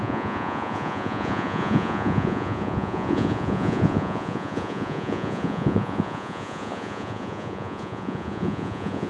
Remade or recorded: remade